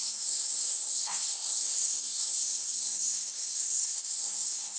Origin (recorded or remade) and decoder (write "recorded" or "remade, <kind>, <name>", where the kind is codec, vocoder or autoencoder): remade, codec, SNAC